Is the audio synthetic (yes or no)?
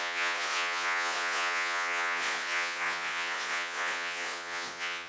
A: yes